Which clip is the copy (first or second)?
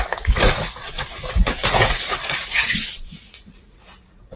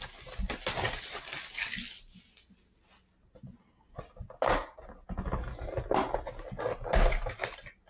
first